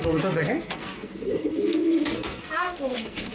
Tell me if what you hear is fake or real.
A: fake